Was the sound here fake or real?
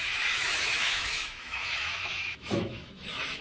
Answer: fake